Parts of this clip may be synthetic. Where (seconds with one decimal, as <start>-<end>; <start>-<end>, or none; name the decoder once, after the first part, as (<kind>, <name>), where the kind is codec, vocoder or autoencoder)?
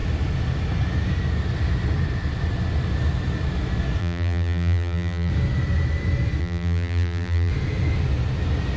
4.0-5.3 (vocoder, BigVGAN v2); 6.4-7.5